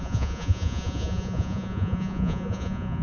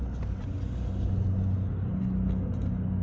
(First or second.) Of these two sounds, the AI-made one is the first